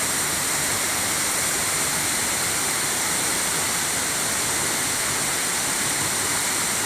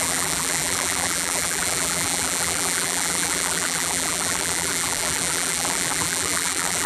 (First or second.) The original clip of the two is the first